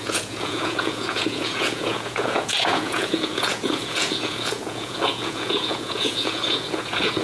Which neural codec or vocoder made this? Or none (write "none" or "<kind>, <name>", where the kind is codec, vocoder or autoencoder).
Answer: vocoder, Vocos